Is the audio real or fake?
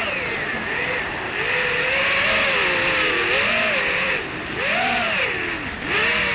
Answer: real